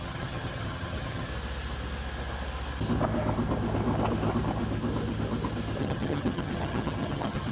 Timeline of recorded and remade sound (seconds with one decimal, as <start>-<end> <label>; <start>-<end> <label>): 0.0-1.3 remade; 1.3-5.8 recorded; 5.8-7.5 remade